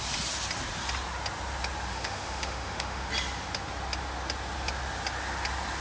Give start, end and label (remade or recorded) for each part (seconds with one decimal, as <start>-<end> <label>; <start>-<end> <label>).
0.0-1.9 recorded; 1.9-3.1 remade; 3.1-5.8 recorded

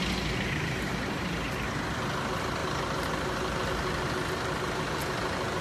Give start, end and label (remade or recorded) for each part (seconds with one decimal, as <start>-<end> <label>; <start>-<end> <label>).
0.0-5.6 recorded